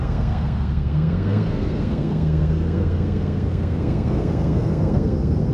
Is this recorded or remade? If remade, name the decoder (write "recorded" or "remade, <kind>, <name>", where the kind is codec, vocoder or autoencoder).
remade, codec, SNAC